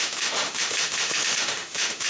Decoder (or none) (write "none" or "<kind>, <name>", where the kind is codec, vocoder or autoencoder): autoencoder, DAC-VAE